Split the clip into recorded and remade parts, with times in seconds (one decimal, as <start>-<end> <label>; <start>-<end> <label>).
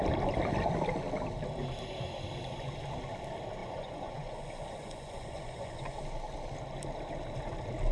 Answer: 0.0-3.6 recorded; 3.6-6.0 remade; 6.0-7.9 recorded